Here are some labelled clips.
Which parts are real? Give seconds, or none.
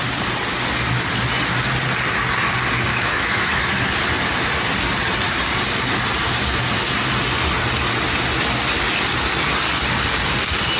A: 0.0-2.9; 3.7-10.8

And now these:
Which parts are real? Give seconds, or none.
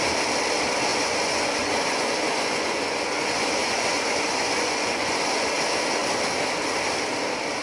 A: 0.0-0.9; 5.5-7.6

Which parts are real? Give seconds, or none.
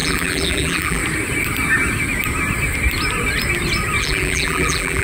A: 1.0-4.0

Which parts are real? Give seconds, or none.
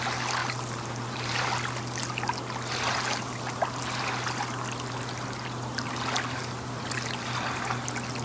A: 0.0-0.4; 1.4-8.2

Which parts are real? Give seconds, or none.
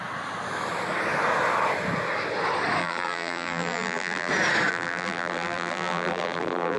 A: 0.0-2.8; 4.3-4.7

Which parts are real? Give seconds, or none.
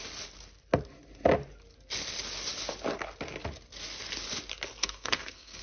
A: 0.0-4.8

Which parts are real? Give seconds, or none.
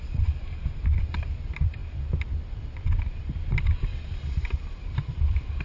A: 0.0-4.3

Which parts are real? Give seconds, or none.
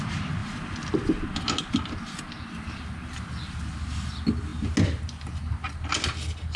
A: 0.0-6.6